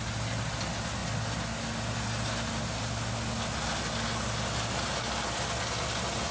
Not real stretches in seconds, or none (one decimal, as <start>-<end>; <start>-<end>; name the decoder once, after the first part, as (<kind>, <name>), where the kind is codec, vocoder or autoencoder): none